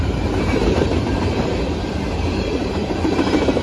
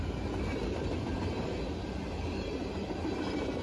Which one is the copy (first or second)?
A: first